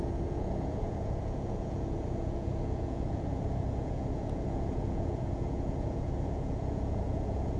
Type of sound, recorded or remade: remade